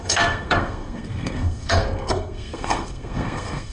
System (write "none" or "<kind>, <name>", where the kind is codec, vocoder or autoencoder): codec, SNAC